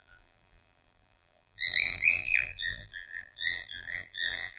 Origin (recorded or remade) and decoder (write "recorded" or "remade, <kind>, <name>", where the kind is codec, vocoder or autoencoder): remade, vocoder, BigVGAN v2